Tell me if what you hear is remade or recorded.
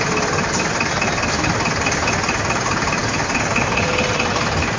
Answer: recorded